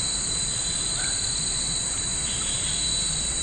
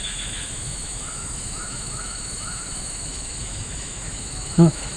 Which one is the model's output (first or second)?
second